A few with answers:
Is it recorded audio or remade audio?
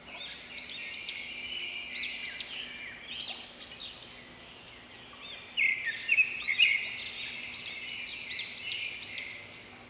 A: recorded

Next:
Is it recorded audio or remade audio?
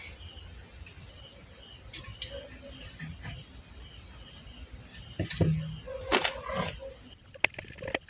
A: recorded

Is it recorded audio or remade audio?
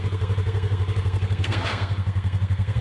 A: remade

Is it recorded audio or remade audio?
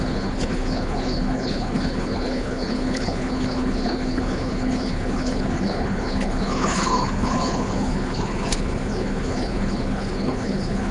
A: remade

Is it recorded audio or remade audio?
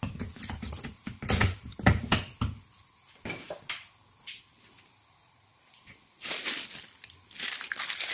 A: recorded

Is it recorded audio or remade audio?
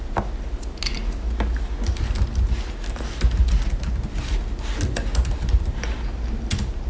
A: recorded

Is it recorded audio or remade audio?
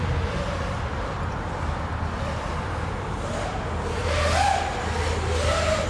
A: recorded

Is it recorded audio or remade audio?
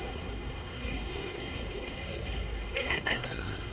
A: remade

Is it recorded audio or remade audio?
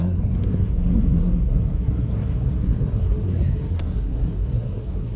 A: remade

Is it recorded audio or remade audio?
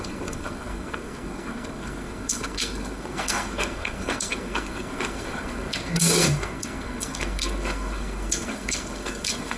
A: remade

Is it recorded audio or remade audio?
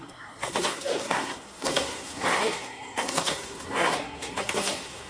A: remade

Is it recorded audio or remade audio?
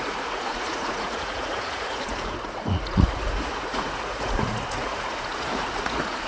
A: remade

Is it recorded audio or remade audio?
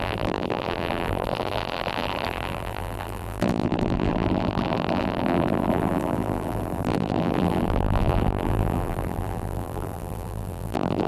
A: remade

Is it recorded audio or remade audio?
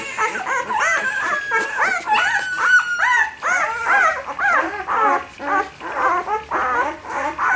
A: recorded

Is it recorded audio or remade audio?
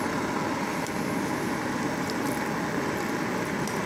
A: recorded